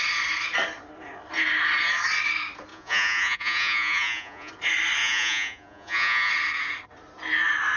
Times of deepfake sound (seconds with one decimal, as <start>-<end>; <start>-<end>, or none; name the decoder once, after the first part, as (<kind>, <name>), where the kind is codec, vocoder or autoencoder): 2.7-4.5 (vocoder, Vocos); 5.0-6.3